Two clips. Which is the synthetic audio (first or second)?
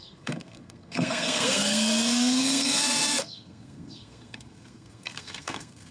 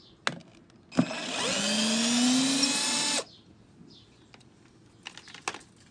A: first